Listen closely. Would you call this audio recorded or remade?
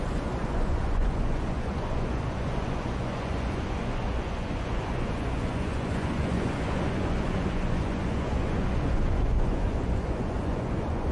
remade